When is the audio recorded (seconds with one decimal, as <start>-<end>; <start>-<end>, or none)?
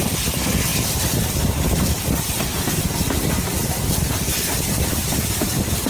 0.0-3.6; 4.2-5.9